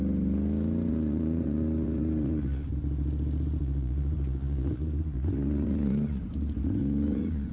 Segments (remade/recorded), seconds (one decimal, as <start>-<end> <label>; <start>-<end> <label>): 0.0-0.9 recorded; 0.9-2.7 remade; 2.7-3.6 recorded; 3.6-6.2 remade; 6.2-6.8 recorded; 6.8-7.5 remade